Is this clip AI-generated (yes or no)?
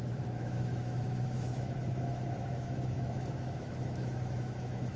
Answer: yes